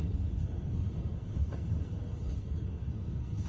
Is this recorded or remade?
remade